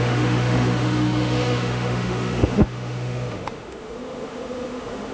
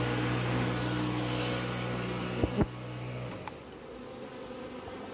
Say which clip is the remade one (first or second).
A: first